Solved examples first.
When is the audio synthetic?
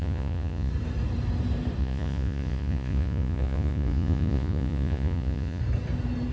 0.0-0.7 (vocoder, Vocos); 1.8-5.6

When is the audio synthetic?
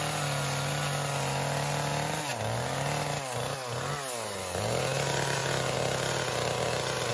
none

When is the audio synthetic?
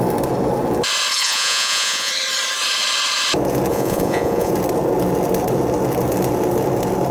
1.1-2.1 (vocoder, Vocos); 3.7-4.5